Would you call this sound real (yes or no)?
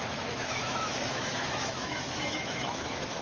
no